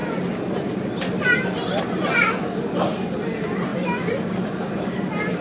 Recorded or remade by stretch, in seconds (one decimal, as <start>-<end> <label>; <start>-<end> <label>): 0.0-5.4 recorded

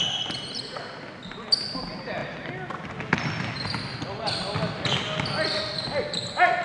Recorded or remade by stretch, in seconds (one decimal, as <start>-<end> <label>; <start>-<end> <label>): 0.0-6.6 recorded

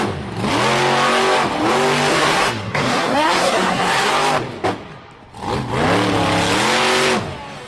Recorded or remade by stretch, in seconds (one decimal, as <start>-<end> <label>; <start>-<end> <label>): 0.0-2.1 recorded; 2.1-4.1 remade; 4.1-7.7 recorded

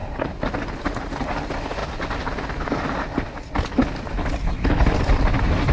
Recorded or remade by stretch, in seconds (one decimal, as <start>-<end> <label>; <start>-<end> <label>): 0.0-5.7 recorded